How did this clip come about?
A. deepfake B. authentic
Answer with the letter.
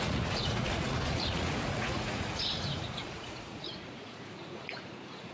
A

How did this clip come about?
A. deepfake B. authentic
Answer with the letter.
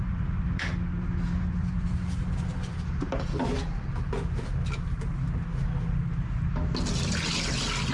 B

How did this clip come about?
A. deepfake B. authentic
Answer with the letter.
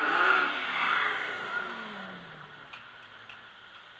B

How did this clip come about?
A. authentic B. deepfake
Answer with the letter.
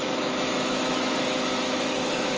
B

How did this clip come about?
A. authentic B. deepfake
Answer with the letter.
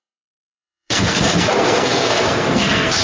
B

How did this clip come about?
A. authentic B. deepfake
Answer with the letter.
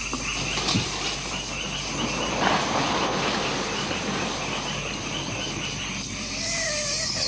A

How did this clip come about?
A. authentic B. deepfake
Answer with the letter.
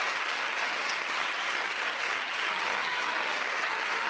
B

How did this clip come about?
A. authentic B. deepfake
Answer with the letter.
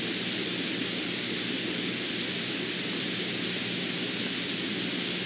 A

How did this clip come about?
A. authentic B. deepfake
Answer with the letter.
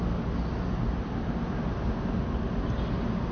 A